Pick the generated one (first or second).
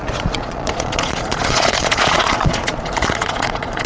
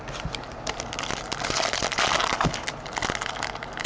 first